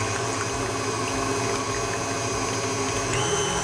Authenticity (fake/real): real